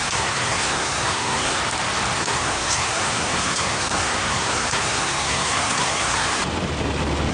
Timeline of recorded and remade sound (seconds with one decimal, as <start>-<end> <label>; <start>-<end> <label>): 0.0-1.6 remade; 1.6-2.2 recorded; 2.2-6.4 remade; 6.4-7.3 recorded